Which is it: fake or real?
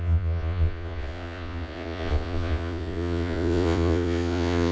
fake